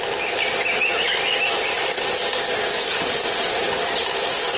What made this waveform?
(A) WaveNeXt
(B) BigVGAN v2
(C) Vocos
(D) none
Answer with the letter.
D